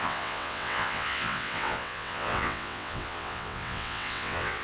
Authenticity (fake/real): fake